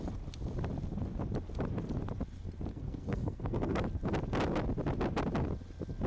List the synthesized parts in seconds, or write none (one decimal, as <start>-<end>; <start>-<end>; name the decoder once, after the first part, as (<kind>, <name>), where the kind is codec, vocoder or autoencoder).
2.7-3.8 (codec, SNAC)